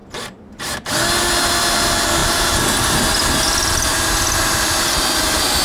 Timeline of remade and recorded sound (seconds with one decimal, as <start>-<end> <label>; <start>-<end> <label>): 0.0-5.6 recorded